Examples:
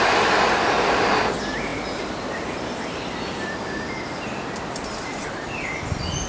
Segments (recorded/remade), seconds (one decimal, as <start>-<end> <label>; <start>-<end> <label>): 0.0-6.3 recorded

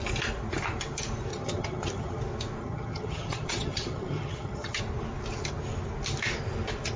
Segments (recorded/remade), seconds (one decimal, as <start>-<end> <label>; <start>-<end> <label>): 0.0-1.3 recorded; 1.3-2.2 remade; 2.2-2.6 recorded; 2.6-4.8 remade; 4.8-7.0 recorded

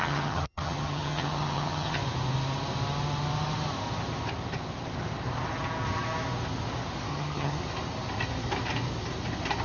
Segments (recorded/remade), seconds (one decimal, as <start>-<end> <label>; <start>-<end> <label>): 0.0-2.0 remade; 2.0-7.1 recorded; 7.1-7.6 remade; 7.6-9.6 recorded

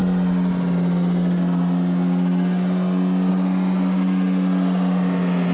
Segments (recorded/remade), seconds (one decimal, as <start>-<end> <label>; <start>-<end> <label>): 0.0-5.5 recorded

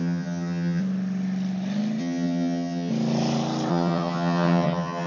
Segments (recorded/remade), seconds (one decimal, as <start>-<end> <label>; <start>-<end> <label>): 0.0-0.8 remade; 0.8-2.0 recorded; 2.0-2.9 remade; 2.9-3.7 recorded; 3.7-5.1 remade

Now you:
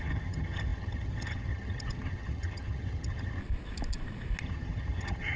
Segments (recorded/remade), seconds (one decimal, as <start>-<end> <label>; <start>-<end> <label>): 0.0-3.4 remade; 3.4-4.4 recorded; 4.4-5.4 remade